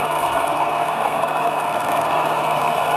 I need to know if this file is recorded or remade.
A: remade